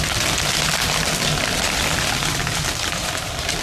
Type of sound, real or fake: real